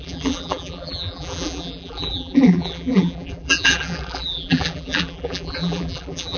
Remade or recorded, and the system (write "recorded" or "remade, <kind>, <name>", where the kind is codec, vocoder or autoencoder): remade, vocoder, BigVGAN v2